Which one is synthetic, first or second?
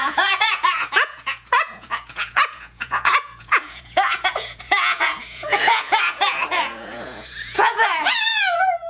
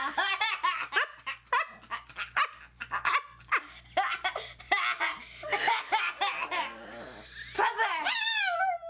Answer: first